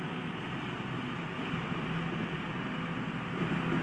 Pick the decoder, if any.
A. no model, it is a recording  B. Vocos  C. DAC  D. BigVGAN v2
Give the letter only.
A